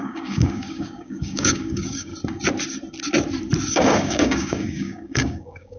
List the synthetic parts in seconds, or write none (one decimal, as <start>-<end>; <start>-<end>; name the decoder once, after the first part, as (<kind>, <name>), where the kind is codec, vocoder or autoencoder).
0.0-2.1 (codec, DAC); 3.7-5.8